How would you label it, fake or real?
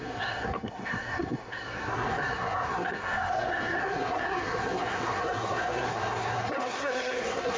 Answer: fake